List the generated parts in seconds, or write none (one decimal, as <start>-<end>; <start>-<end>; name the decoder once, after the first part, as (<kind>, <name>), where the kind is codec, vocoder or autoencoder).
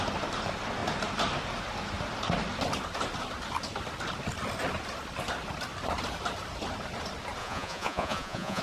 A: 7.4-8.6 (vocoder, Vocos)